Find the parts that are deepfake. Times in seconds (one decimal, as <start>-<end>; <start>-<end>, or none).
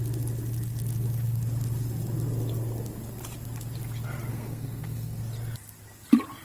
4.3-5.2